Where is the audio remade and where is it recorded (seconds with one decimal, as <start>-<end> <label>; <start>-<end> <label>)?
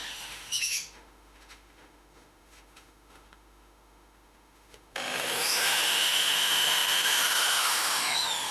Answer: 0.0-8.5 remade